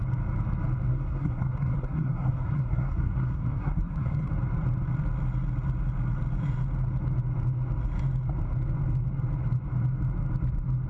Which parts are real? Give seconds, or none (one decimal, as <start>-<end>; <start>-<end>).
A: 0.0-0.9; 4.3-10.9